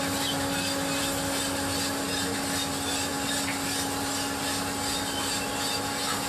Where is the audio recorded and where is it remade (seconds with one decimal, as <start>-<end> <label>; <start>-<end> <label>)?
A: 0.0-6.3 recorded